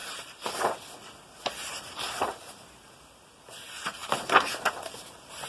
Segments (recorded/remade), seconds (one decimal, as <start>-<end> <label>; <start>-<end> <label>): 0.0-3.3 remade; 3.3-5.5 recorded